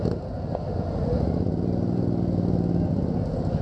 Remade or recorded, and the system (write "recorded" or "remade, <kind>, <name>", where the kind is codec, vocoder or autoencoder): recorded